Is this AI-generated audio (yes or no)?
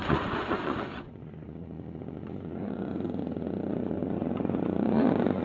yes